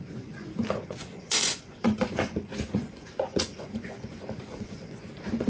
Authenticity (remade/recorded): remade